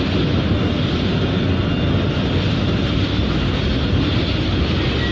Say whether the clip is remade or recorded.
recorded